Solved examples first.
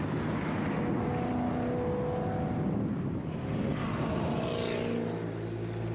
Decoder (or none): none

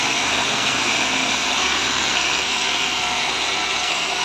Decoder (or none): codec, SNAC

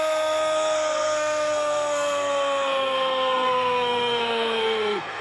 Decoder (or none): codec, SNAC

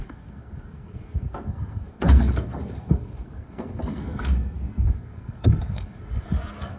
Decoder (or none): codec, SNAC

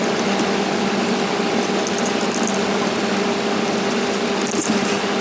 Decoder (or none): none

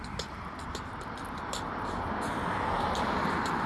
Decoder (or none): none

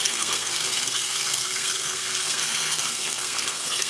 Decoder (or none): codec, SNAC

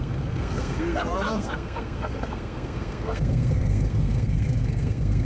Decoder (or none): codec, SNAC